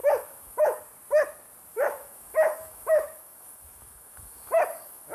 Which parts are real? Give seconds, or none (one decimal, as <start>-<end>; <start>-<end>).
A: 0.8-1.7